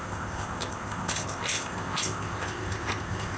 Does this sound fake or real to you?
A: fake